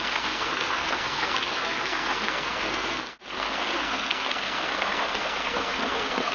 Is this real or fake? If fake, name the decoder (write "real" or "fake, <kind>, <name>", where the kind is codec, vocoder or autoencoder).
fake, codec, SNAC